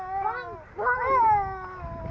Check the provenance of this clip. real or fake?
real